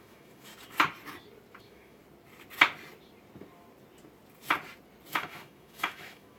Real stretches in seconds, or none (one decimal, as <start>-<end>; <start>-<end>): 0.5-1.6; 2.0-5.1